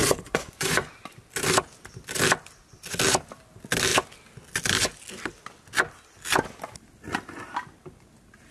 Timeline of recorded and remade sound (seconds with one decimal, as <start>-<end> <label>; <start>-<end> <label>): 0.0-0.9 remade; 0.9-8.5 recorded

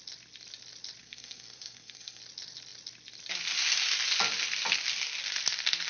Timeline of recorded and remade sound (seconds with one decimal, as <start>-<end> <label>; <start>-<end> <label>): 0.0-1.0 recorded; 1.0-2.2 remade; 2.2-5.9 recorded

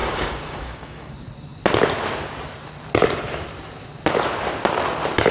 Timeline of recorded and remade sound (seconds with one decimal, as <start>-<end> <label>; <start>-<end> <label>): 0.0-1.1 remade; 1.1-5.3 recorded

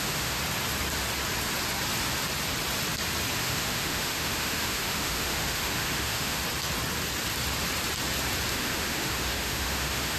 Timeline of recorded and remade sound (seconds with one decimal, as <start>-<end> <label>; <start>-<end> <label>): 0.0-0.4 remade; 0.4-3.4 recorded; 3.4-6.4 remade; 6.4-8.5 recorded; 8.5-10.2 remade

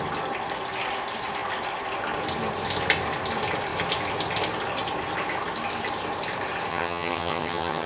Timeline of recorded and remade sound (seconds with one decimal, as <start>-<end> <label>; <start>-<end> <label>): 0.0-6.7 recorded; 6.7-7.9 remade